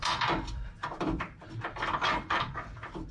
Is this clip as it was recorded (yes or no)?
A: no